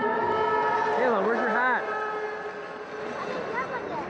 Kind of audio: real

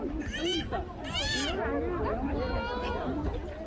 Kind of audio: real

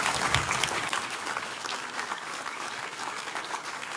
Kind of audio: fake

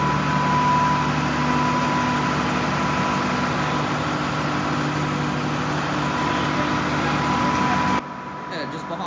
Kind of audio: real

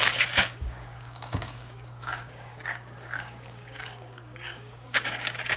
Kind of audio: fake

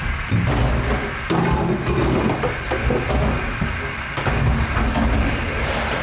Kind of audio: real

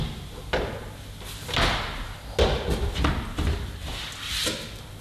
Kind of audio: real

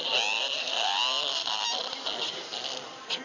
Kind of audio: real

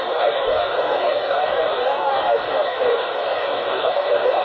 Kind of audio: fake